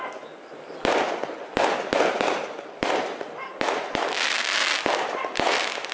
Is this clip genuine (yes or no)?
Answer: yes